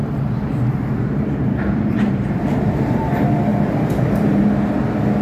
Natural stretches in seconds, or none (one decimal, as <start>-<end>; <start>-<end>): 3.0-3.5; 4.4-5.2